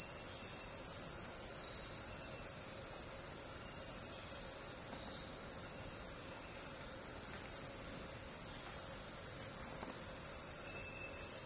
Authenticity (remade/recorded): recorded